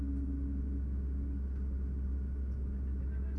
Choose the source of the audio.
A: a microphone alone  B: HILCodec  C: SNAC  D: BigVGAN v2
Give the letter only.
A